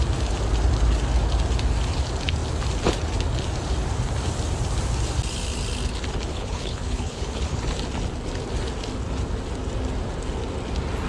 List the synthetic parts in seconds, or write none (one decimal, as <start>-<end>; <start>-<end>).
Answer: 6.3-7.6